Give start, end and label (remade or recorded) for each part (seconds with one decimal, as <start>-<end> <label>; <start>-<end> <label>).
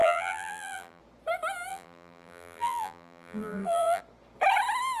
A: 0.0-1.0 remade; 1.0-1.7 recorded; 1.7-4.0 remade; 4.0-5.0 recorded